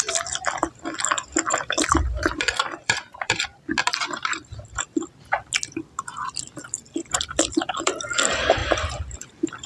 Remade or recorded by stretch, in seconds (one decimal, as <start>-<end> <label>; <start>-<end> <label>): 0.0-3.5 remade; 3.5-6.4 recorded; 6.4-8.6 remade; 8.6-9.2 recorded; 9.2-9.7 remade